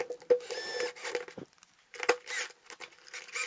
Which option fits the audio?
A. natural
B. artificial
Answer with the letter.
A